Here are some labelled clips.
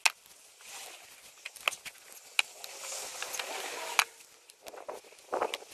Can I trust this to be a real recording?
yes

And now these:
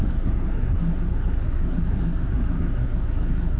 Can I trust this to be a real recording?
no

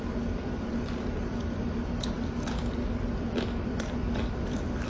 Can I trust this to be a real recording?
no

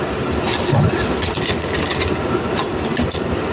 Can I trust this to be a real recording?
yes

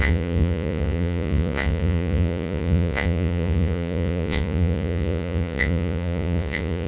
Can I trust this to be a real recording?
no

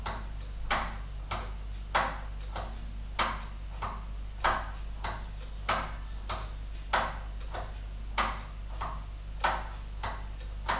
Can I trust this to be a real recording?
yes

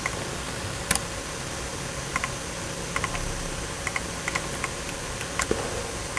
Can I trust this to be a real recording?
yes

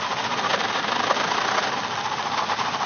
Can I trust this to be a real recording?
yes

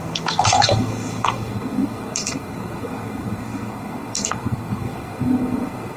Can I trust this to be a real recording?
no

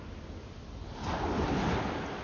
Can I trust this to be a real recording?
yes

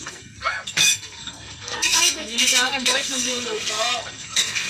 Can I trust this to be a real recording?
no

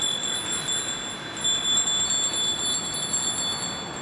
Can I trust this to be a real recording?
yes